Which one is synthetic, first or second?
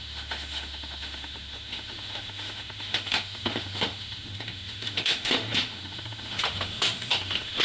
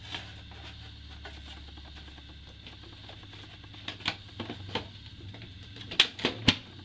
first